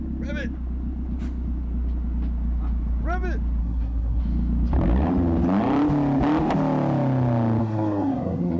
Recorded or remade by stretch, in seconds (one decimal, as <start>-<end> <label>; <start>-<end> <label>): 0.0-3.6 recorded; 3.6-4.2 remade; 4.2-7.6 recorded; 7.6-8.6 remade